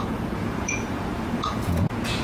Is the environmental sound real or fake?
fake